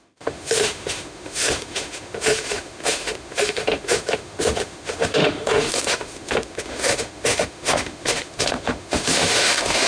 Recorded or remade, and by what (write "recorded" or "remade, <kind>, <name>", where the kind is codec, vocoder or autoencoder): remade, autoencoder, DAC-VAE